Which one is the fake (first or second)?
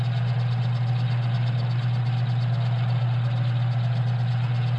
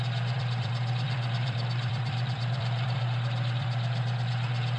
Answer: second